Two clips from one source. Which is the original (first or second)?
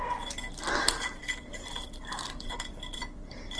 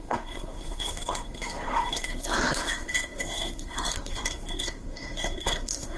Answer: first